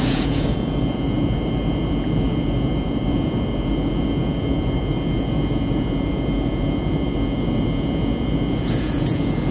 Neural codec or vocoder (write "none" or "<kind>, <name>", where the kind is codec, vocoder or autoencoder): vocoder, Vocos